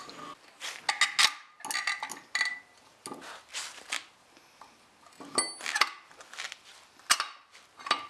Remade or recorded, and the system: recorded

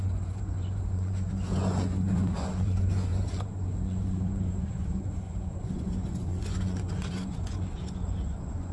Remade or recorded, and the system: remade, vocoder, Vocos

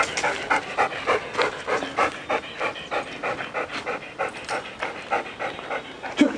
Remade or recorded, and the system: recorded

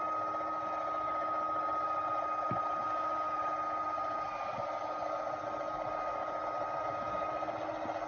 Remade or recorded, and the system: recorded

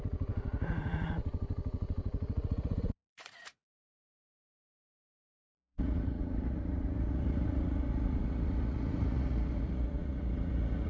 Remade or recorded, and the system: remade, vocoder, Vocos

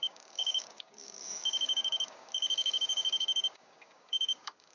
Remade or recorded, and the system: remade, codec, DAC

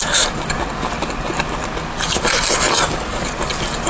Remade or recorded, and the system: recorded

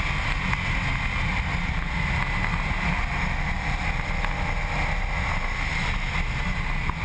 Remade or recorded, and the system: recorded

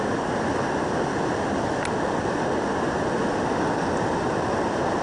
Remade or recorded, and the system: recorded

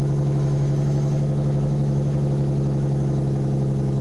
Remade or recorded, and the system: remade, autoencoder, DAC-VAE